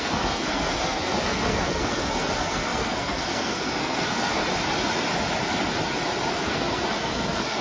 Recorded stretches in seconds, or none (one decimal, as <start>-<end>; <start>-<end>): 4.4-6.3